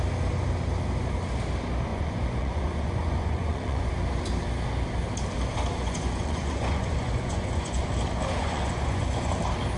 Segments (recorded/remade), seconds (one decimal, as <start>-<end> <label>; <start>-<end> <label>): 0.0-1.9 recorded; 1.9-3.9 remade; 3.9-5.8 recorded; 5.8-7.8 remade; 7.8-8.4 recorded; 8.4-9.3 remade; 9.3-9.8 recorded